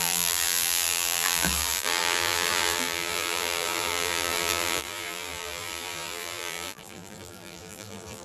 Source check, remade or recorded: remade